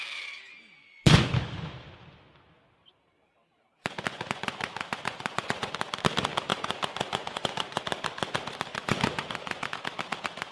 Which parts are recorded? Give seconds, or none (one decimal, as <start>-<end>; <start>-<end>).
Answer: 0.0-0.8; 1.3-4.1; 5.7-6.5; 7.8-8.7; 9.7-10.5